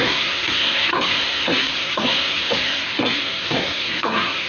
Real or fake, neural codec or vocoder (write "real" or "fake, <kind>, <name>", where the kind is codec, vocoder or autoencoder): fake, codec, SNAC